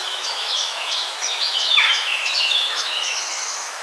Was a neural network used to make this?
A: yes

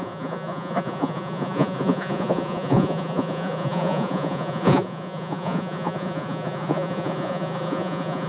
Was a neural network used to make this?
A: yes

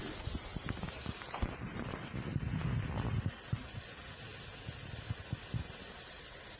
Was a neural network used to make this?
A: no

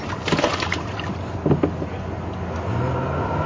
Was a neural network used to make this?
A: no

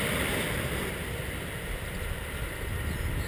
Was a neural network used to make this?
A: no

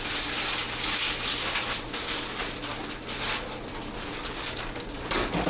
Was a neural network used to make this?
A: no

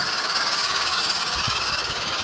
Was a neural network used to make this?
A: yes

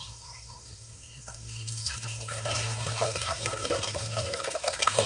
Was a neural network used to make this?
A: yes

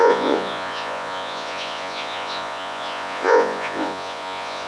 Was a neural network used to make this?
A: yes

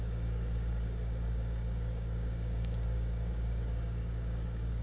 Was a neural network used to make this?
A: yes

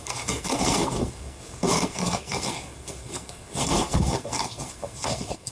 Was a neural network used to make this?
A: yes